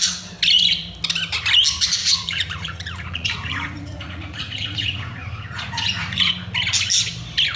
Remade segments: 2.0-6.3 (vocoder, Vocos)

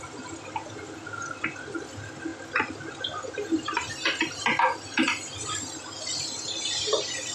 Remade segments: none

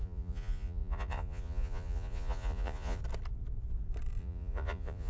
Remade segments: 0.0-3.0 (vocoder, Vocos); 4.2-5.1